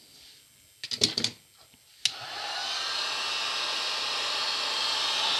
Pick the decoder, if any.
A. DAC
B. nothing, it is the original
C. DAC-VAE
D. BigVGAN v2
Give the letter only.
B